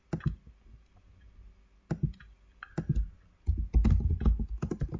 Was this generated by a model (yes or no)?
no